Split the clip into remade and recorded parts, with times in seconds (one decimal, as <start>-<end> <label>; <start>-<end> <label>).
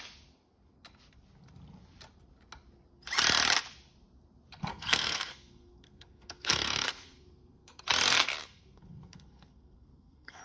0.0-4.7 recorded; 4.7-7.8 remade; 7.8-8.4 recorded; 8.4-10.4 remade